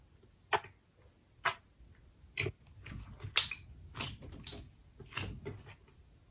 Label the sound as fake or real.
real